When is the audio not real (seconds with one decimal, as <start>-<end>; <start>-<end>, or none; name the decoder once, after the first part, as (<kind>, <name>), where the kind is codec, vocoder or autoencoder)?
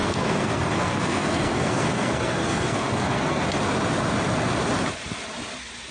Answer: 0.0-3.4 (codec, SNAC)